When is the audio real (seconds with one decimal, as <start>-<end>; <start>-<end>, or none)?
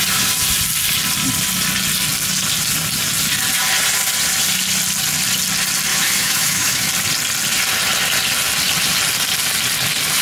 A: 0.0-5.9; 6.9-10.2